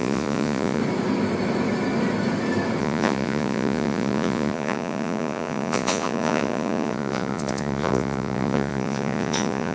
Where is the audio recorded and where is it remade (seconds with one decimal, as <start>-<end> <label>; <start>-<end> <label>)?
0.0-0.8 remade; 0.8-2.8 recorded; 2.8-9.7 remade